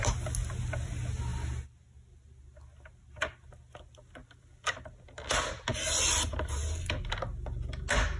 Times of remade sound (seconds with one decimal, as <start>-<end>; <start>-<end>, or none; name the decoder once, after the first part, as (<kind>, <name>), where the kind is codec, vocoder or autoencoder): 4.2-4.8 (vocoder, BigVGAN v2)